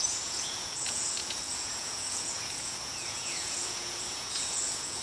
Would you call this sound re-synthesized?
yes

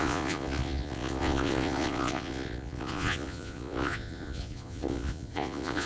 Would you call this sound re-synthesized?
yes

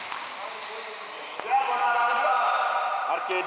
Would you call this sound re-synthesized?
no